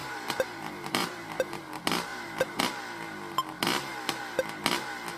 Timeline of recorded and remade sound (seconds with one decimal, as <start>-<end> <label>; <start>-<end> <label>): 0.0-1.6 remade; 1.6-2.1 recorded; 2.1-2.6 remade; 2.6-5.2 recorded